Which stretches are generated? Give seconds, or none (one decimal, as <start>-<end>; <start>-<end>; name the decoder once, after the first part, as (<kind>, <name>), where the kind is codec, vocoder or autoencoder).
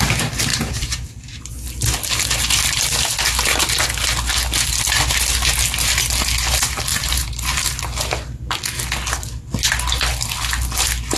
0.5-1.5 (vocoder, BigVGAN v2); 6.9-7.8